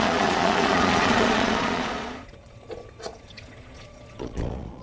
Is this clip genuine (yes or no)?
no